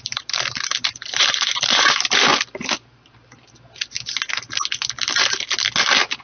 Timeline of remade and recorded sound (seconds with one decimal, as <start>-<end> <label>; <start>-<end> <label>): 0.0-2.3 remade; 2.3-6.2 recorded